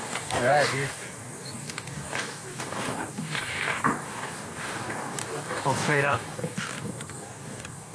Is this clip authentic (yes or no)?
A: no